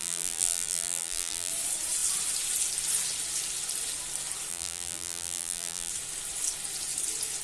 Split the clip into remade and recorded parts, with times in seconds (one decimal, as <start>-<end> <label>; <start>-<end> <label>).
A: 0.0-1.5 remade; 1.5-4.5 recorded; 4.5-5.9 remade; 5.9-7.4 recorded